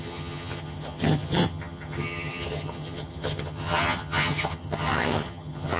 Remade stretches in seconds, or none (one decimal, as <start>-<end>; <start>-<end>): 0.0-5.8